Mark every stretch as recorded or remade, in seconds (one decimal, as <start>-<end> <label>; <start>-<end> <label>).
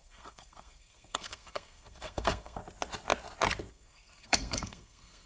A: 0.0-2.6 remade; 2.6-3.7 recorded; 3.7-5.3 remade